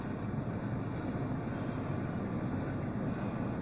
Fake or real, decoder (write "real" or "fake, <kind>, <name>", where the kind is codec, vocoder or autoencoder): real